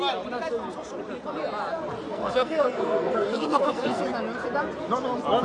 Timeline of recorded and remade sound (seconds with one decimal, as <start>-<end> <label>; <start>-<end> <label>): 0.0-2.1 recorded; 2.1-4.0 remade; 4.0-5.4 recorded

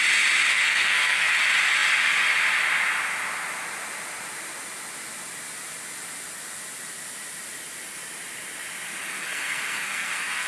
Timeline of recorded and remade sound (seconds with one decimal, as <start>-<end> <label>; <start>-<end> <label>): 0.0-0.5 recorded; 0.5-1.3 remade; 1.3-9.0 recorded; 9.0-10.5 remade